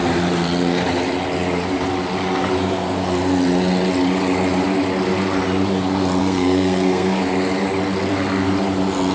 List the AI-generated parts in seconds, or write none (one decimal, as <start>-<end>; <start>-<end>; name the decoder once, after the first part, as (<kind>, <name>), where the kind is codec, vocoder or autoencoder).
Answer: 6.2-7.3 (codec, SNAC)